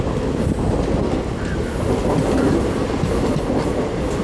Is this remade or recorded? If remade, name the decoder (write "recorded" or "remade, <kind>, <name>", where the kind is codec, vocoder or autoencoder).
recorded